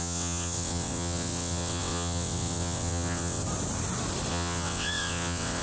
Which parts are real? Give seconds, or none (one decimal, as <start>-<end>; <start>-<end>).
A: 3.4-4.3